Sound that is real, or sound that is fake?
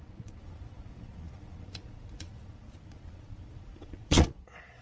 fake